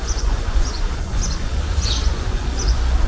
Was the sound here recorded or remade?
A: remade